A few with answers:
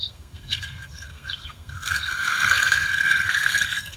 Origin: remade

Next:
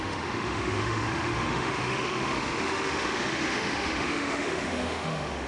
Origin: remade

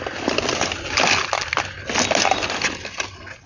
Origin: recorded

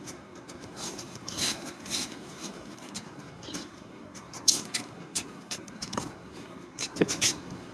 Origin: remade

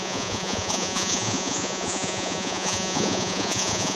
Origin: remade